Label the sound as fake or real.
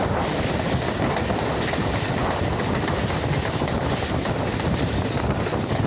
real